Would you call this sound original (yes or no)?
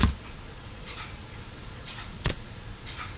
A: no